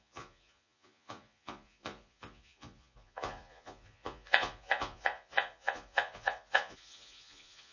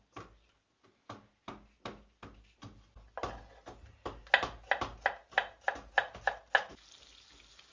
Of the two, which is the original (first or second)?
second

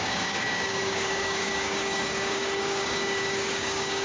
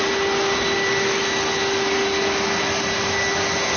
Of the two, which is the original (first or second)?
second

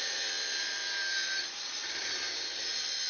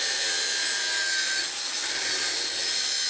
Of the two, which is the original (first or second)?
second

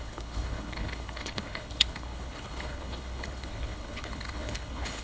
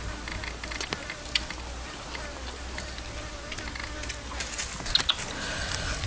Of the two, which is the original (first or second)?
second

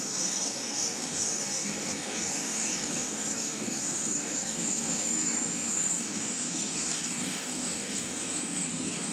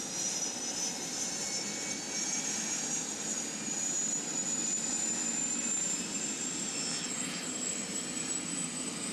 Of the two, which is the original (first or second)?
second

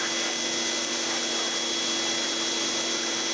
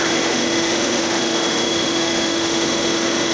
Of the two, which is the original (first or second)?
first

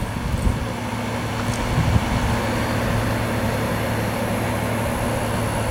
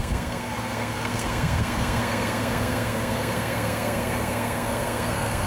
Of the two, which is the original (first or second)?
first